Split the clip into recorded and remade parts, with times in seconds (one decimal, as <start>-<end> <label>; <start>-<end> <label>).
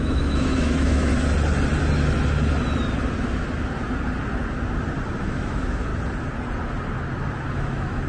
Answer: 0.0-1.1 remade; 1.1-5.2 recorded; 5.2-5.9 remade; 5.9-7.5 recorded; 7.5-8.1 remade